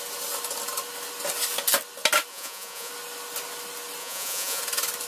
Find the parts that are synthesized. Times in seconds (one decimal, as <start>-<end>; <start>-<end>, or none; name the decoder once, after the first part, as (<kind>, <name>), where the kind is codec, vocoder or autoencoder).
2.3-2.9 (vocoder, Vocos); 4.0-4.6